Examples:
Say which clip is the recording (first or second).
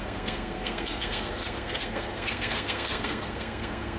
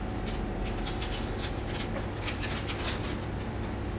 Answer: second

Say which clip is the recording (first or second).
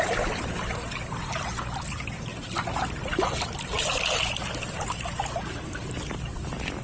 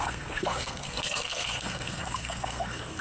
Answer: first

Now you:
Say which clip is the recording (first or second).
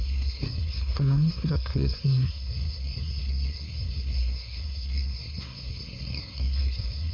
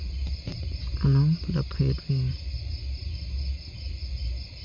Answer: second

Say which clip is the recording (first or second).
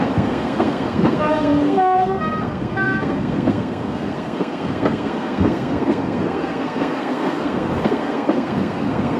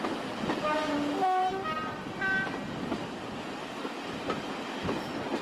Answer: second